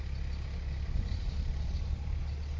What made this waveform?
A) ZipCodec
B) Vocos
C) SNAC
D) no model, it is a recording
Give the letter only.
D